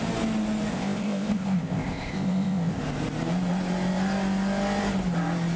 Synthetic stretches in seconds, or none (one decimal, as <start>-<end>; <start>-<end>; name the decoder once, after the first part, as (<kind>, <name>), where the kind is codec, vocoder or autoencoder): 0.7-2.8 (codec, ZipCodec)